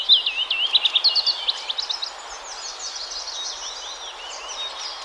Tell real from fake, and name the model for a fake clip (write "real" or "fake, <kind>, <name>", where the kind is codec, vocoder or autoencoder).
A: real